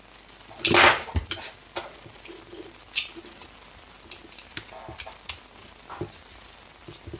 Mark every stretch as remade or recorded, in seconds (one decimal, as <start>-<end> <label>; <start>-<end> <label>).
0.0-7.2 recorded